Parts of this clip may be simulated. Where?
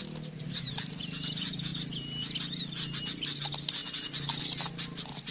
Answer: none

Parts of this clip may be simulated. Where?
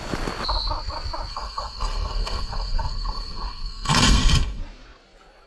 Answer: 1.3-4.6 (codec, SNAC)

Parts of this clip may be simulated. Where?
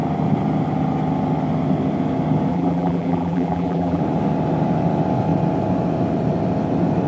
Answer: 2.5-4.0 (vocoder, BigVGAN v2)